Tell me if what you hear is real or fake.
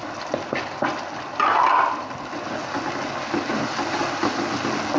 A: real